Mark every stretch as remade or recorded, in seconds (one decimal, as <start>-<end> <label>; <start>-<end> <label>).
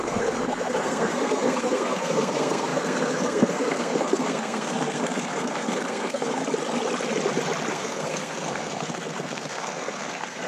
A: 0.0-6.4 remade; 6.4-7.7 recorded; 7.7-10.5 remade